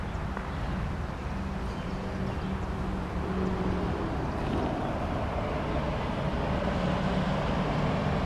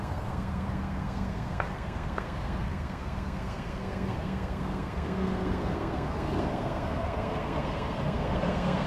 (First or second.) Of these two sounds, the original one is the first